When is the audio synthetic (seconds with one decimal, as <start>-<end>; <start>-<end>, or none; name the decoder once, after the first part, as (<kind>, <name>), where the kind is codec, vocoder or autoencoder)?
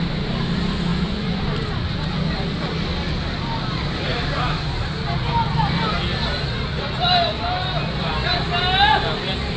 0.9-1.4 (vocoder, Vocos)